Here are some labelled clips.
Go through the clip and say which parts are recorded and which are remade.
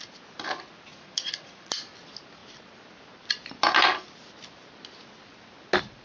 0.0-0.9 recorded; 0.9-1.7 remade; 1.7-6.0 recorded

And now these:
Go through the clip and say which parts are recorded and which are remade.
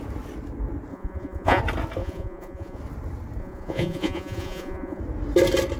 0.0-0.9 recorded; 0.9-1.6 remade; 1.6-2.0 recorded; 2.0-2.8 remade; 2.8-3.4 recorded; 3.4-5.0 remade; 5.0-5.8 recorded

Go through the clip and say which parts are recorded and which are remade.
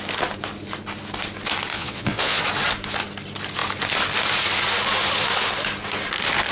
0.0-1.7 recorded; 1.7-2.4 remade; 2.4-6.5 recorded